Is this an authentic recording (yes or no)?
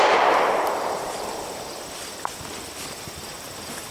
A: no